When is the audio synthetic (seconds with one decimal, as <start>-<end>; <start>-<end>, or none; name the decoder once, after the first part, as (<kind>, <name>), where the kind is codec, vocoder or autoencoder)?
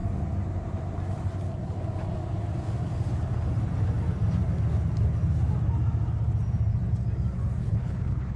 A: 7.6-8.4 (codec, HILCodec)